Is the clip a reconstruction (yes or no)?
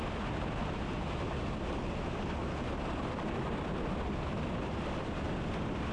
no